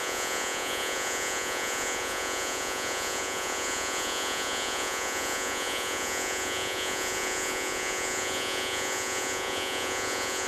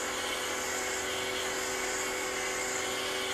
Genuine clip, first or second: second